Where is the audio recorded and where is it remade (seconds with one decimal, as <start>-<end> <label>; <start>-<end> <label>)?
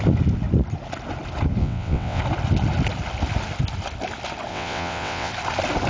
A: 0.0-1.6 recorded; 1.6-2.2 remade; 2.2-4.5 recorded; 4.5-5.3 remade; 5.3-5.9 recorded